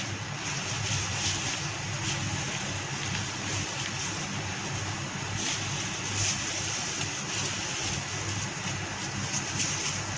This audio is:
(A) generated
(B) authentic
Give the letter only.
B